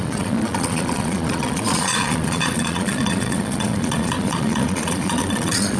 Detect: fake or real fake